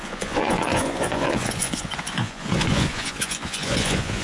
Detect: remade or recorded remade